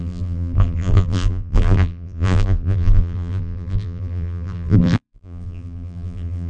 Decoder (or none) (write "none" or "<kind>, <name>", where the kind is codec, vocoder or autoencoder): vocoder, BigVGAN v2